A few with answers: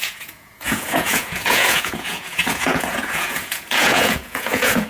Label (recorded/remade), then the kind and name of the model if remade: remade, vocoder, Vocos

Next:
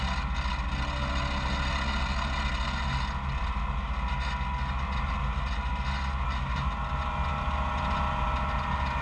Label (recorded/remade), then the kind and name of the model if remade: recorded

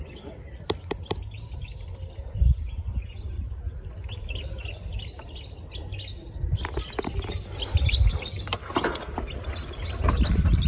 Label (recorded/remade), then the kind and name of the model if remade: recorded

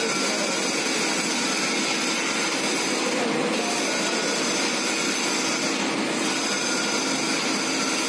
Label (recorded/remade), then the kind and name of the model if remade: recorded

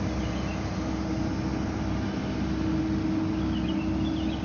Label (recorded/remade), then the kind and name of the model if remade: recorded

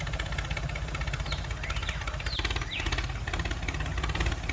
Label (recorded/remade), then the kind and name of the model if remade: recorded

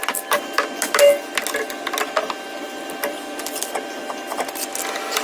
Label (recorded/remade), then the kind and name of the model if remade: recorded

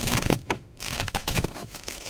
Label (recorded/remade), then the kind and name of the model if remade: remade, autoencoder, DAC-VAE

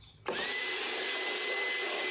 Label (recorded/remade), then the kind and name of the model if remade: recorded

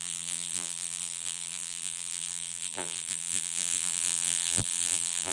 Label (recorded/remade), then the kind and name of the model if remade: remade, vocoder, BigVGAN v2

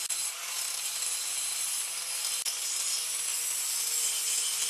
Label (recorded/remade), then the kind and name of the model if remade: recorded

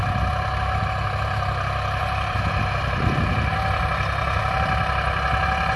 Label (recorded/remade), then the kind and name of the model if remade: recorded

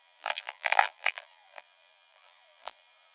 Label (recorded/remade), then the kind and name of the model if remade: remade, vocoder, BigVGAN v2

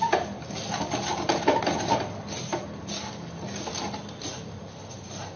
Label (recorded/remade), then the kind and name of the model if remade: recorded